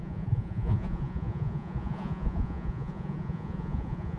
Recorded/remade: remade